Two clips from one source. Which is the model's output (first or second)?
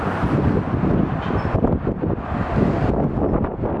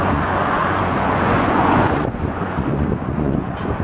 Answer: second